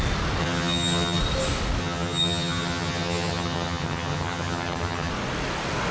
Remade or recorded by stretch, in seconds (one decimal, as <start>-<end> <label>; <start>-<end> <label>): 0.0-0.4 recorded; 0.4-1.2 remade; 1.2-1.8 recorded; 1.8-5.1 remade; 5.1-5.9 recorded